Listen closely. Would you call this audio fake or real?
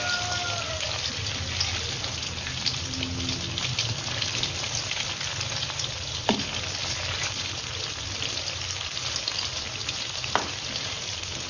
real